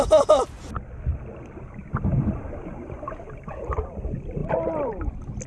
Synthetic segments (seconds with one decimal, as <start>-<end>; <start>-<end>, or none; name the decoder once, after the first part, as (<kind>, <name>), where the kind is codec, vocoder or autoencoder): 2.1-3.8 (vocoder, BigVGAN v2); 4.4-5.1

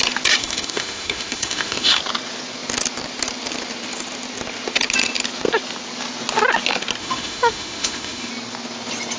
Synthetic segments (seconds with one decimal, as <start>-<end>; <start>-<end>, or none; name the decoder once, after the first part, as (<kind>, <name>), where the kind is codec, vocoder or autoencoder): 0.4-2.0 (autoencoder, DAC-VAE); 7.0-8.3

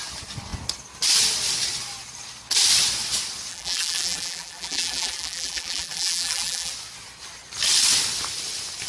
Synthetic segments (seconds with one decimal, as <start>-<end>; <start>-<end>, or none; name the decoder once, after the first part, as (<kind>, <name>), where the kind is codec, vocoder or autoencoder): 3.5-6.7 (vocoder, BigVGAN v2)

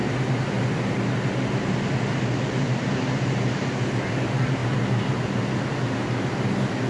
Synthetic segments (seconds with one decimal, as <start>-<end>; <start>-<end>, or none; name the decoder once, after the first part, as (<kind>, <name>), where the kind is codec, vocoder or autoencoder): none

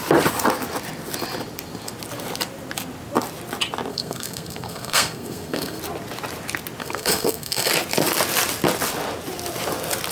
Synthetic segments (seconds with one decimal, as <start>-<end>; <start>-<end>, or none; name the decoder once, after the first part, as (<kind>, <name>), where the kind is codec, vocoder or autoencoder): 3.9-5.8 (codec, SNAC); 6.8-7.7

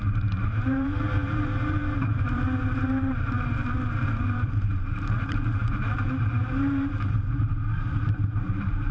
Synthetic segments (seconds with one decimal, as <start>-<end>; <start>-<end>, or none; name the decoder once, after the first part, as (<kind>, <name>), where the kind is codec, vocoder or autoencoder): 0.0-8.9 (vocoder, BigVGAN v2)

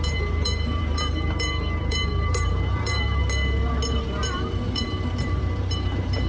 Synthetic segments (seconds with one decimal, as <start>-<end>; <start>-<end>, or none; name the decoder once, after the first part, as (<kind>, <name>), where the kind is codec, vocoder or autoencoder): 0.0-3.2 (vocoder, BigVGAN v2); 4.2-6.3